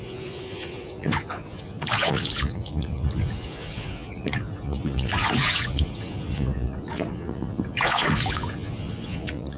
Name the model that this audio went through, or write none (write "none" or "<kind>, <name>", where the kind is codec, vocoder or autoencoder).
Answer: vocoder, Vocos